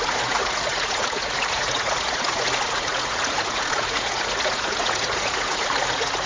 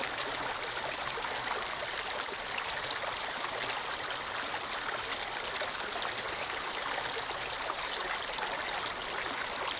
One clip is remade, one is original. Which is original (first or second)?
second